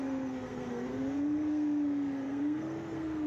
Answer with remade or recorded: remade